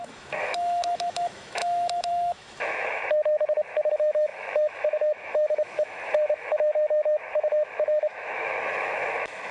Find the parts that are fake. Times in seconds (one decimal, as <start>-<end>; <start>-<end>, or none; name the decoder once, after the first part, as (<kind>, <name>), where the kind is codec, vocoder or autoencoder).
0.0-3.0 (autoencoder, DAC-VAE); 3.9-9.5